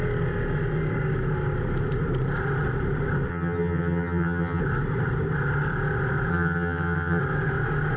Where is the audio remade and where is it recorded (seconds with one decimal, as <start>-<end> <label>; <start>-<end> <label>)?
0.0-3.3 recorded; 3.3-4.6 remade; 4.6-6.3 recorded; 6.3-7.2 remade; 7.2-8.0 recorded